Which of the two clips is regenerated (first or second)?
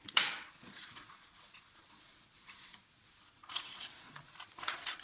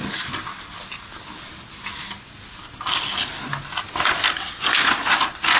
first